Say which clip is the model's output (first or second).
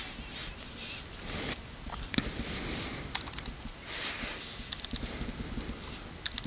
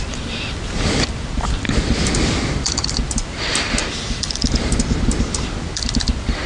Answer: second